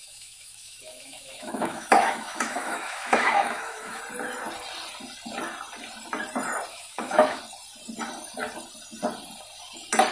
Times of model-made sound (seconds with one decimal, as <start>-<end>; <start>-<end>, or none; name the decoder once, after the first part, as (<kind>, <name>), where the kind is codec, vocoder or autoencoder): 0.0-4.0 (autoencoder, DAC-VAE); 6.7-7.4